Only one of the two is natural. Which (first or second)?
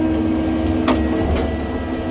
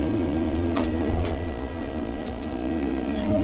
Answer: first